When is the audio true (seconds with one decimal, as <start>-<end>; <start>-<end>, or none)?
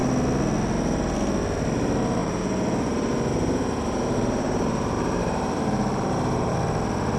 0.0-2.2; 6.5-7.2